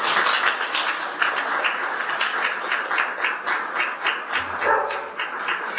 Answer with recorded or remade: recorded